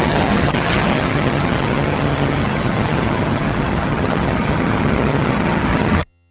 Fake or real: fake